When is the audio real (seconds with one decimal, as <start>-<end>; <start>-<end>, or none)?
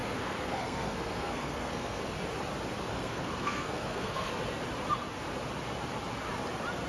2.0-2.9; 4.3-6.9